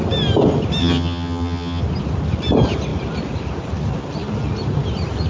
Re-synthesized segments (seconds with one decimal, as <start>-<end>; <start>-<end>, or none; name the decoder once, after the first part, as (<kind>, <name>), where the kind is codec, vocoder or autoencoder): 0.8-1.8 (vocoder, HiFi-GAN)